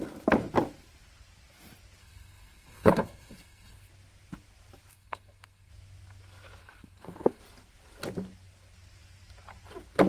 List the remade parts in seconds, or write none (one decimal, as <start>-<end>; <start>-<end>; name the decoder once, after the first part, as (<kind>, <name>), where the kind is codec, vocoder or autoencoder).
2.0-3.9 (codec, SNAC); 4.9-5.7; 6.6-7.4